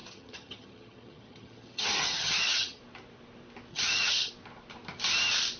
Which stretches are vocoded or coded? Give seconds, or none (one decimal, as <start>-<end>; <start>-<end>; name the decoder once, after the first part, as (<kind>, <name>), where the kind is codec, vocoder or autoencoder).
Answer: 0.0-2.8 (vocoder, HiFi-GAN); 3.7-4.3